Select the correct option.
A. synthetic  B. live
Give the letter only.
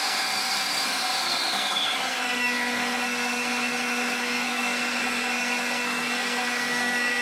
A